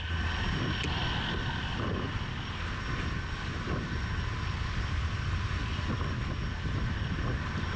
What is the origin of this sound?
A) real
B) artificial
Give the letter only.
A